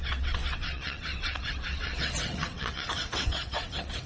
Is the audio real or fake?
fake